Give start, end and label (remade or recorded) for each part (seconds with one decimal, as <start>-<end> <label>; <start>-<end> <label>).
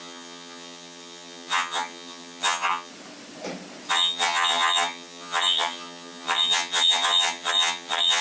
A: 0.0-2.9 remade; 2.9-3.9 recorded; 3.9-8.2 remade